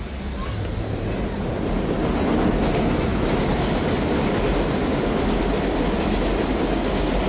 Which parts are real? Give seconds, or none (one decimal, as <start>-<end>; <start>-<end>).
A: 0.0-7.3